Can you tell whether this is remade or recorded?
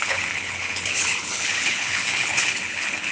remade